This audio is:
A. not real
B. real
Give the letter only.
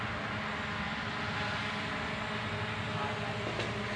B